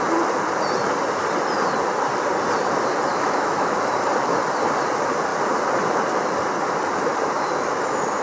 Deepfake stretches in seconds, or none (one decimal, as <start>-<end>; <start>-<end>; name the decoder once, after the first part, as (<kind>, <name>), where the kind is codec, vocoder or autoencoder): 3.1-3.9 (autoencoder, DAC-VAE)